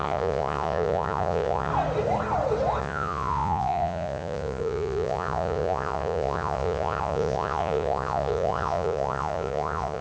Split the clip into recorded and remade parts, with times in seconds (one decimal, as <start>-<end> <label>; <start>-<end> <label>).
0.0-1.7 remade; 1.7-2.8 recorded; 2.8-10.0 remade